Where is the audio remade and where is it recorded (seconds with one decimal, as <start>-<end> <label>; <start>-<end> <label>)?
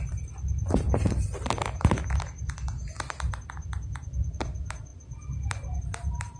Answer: 0.0-6.4 recorded